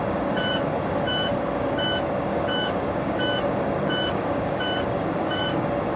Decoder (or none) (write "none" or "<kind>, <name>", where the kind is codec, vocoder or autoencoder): codec, DAC